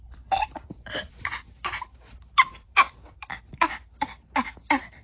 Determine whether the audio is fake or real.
real